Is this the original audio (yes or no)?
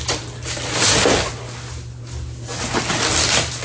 yes